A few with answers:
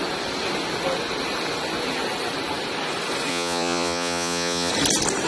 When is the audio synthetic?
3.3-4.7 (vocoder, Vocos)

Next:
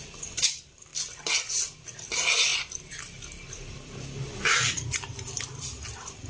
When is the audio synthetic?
0.0-0.9 (vocoder, BigVGAN v2); 1.5-6.3

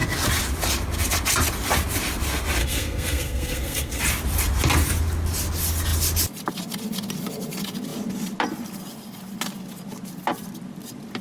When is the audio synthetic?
2.6-4.0 (codec, SNAC)

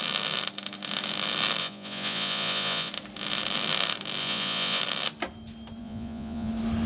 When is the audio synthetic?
1.6-2.9 (vocoder, Vocos); 4.2-4.8; 5.8-6.5

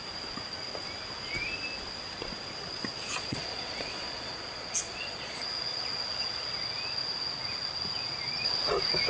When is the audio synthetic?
3.1-6.5 (vocoder, Vocos)

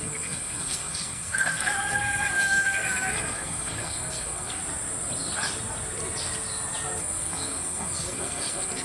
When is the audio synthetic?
0.0-4.6 (codec, SNAC); 7.0-8.8

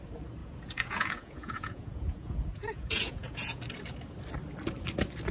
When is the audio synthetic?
0.4-3.6 (vocoder, Vocos)